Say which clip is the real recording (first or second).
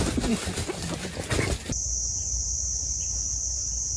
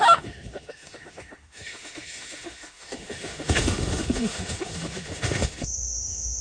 first